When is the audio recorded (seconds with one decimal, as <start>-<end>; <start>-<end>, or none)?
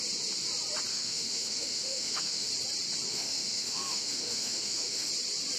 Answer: 0.0-0.9; 2.5-3.1; 5.1-5.6